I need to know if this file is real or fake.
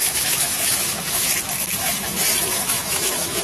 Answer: fake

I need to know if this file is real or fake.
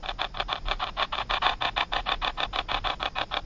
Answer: real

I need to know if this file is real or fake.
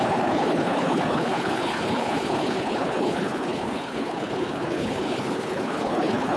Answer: fake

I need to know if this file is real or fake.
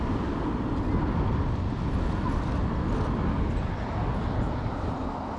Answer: real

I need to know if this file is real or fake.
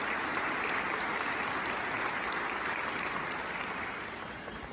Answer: real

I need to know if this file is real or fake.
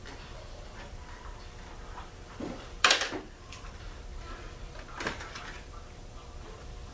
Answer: fake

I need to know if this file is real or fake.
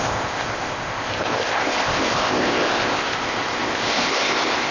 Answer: fake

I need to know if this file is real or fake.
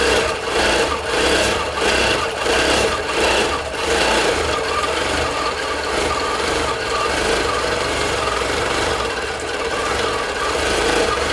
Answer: fake